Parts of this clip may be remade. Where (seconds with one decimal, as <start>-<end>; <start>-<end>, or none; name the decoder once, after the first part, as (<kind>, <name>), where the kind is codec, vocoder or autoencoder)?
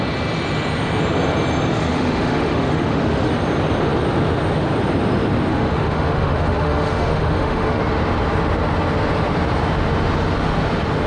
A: 1.7-3.3 (autoencoder, DAC-VAE); 5.5-7.8